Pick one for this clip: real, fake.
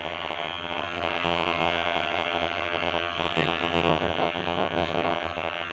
fake